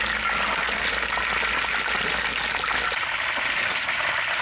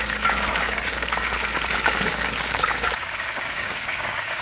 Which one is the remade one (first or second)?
second